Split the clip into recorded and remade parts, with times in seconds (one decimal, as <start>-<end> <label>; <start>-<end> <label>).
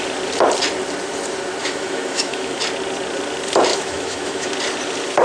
0.0-1.6 recorded; 1.6-2.6 remade; 2.6-3.7 recorded; 3.7-4.5 remade; 4.5-5.2 recorded